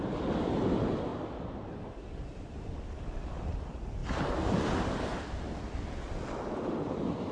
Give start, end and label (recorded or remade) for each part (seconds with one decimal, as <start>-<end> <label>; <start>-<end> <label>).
0.0-7.3 recorded